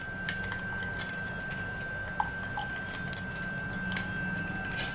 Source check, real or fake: real